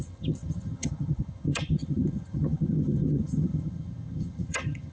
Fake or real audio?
fake